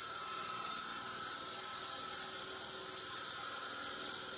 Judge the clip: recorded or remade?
recorded